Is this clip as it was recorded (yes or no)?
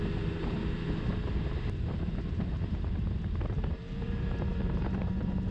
no